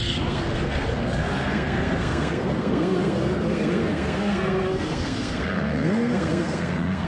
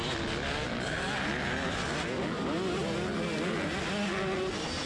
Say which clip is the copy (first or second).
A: first